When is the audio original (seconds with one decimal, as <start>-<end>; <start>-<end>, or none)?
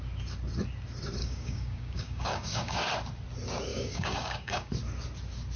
0.0-1.2; 2.9-3.7; 4.7-5.6